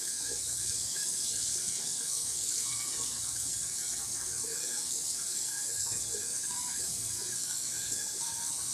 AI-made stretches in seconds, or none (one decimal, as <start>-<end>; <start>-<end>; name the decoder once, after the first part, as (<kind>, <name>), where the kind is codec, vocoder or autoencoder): 0.0-8.7 (codec, SNAC)